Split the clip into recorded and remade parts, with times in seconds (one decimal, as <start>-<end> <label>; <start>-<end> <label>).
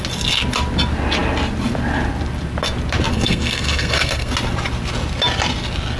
0.0-3.1 recorded; 3.1-4.3 remade; 4.3-6.0 recorded